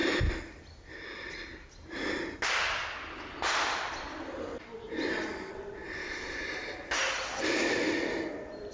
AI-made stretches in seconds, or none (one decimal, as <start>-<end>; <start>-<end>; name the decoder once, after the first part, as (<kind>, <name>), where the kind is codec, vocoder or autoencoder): none